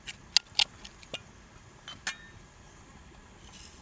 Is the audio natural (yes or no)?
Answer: yes